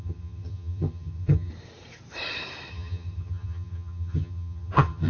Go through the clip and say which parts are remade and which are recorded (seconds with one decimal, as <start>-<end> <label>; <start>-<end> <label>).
0.0-1.5 remade; 1.5-2.7 recorded; 2.7-5.1 remade